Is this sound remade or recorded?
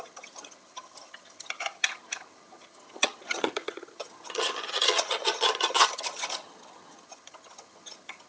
remade